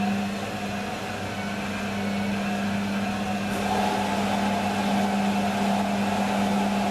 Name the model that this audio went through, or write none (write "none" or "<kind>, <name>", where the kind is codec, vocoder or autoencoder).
none